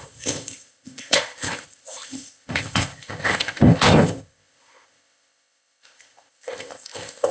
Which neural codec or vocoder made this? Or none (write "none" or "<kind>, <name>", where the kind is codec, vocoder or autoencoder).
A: codec, ZipCodec